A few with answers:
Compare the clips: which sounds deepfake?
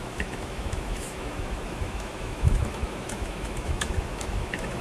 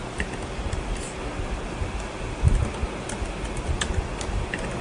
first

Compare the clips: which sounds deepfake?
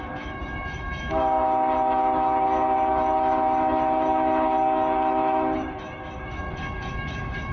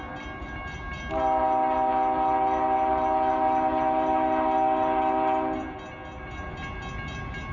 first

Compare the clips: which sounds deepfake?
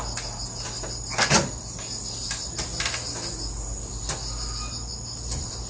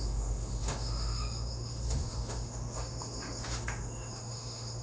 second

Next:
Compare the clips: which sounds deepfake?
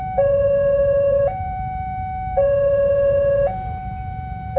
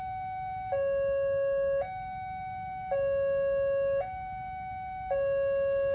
first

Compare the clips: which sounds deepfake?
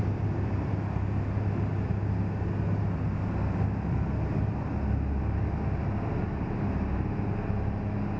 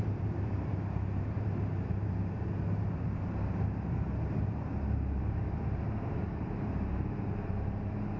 second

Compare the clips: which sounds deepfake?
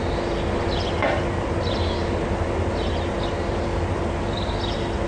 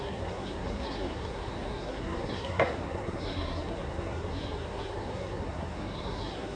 second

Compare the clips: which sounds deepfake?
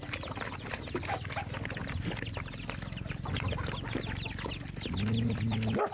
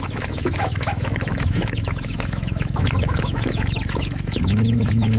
second